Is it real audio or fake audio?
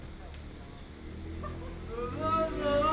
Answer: real